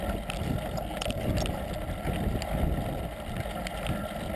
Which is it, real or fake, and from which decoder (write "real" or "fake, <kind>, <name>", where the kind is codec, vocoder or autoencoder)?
real